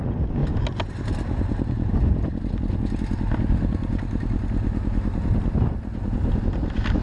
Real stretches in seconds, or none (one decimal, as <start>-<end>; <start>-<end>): 0.0-7.0